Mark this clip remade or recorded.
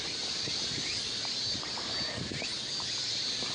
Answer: recorded